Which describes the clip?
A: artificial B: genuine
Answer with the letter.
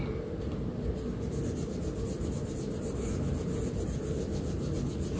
B